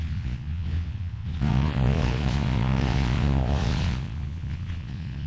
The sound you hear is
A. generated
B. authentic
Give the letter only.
A